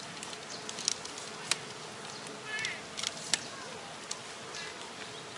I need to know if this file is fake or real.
real